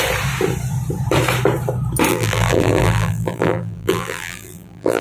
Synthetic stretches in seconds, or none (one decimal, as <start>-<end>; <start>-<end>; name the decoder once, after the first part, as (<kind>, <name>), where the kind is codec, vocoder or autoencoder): 2.1-5.0 (vocoder, BigVGAN v2)